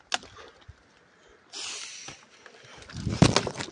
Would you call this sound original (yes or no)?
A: yes